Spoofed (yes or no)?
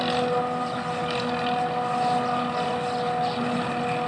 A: no